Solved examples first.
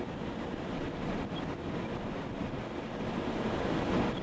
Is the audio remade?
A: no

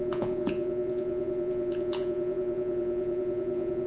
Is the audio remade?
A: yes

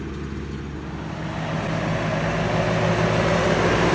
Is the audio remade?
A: no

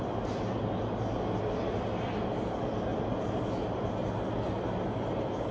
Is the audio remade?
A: no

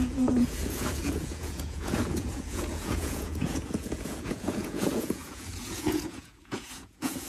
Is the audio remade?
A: yes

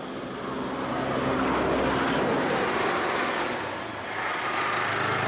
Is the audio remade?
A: no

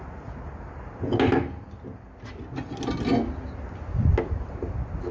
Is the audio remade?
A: no